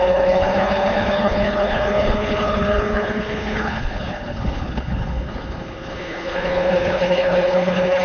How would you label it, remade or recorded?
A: remade